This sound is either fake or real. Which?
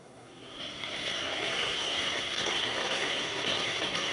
fake